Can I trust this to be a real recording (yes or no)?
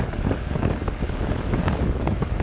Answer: no